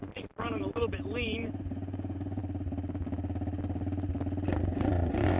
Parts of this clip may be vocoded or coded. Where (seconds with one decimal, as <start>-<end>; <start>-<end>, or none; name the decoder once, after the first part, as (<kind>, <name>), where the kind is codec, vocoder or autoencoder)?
0.0-2.4 (vocoder, Vocos); 4.6-5.4